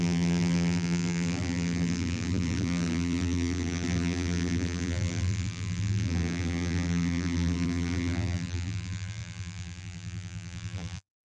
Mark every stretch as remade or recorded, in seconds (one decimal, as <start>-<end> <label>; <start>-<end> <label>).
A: 0.0-11.3 remade